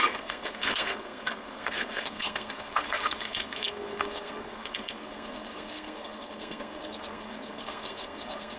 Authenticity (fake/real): fake